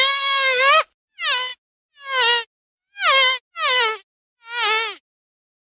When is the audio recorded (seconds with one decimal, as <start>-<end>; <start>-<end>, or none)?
0.0-5.8